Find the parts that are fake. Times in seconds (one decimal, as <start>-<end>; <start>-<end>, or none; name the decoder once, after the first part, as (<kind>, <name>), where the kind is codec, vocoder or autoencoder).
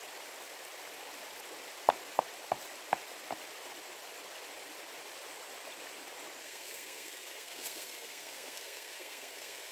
6.4-9.7 (codec, SNAC)